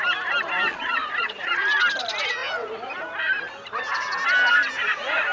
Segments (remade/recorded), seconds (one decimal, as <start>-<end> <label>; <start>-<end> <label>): 0.0-0.7 recorded; 0.7-1.5 remade; 1.5-5.3 recorded